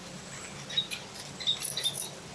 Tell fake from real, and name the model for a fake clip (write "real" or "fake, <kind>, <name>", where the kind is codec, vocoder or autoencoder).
real